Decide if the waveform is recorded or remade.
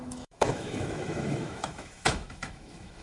remade